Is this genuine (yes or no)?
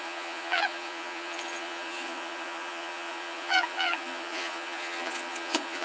no